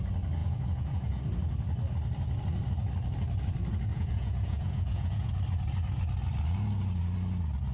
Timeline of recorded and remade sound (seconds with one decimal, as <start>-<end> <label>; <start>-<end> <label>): 0.0-0.4 recorded; 0.4-1.2 remade; 1.2-3.9 recorded; 3.9-5.3 remade; 5.3-7.7 recorded